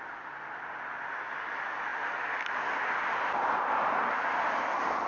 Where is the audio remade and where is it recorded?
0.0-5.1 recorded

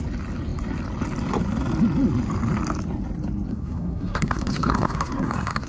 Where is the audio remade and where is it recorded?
0.0-3.5 recorded; 3.5-5.7 remade

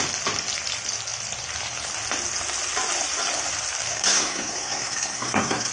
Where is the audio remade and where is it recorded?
0.0-3.9 recorded; 3.9-5.7 remade

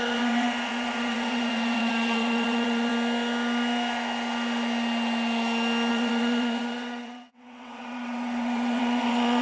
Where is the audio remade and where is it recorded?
0.0-2.9 remade; 2.9-5.9 recorded; 5.9-9.4 remade

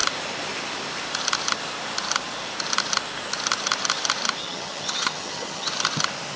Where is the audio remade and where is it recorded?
0.0-4.4 recorded; 4.4-5.7 remade; 5.7-6.4 recorded

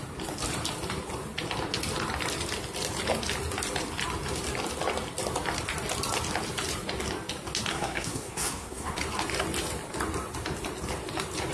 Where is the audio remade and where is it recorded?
0.0-7.7 recorded; 7.7-9.0 remade; 9.0-11.5 recorded

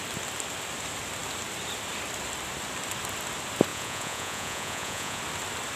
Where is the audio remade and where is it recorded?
0.0-3.7 recorded; 3.7-5.2 remade; 5.2-5.8 recorded

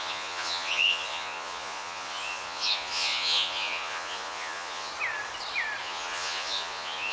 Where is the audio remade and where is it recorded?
0.0-4.9 remade; 4.9-5.8 recorded; 5.8-7.1 remade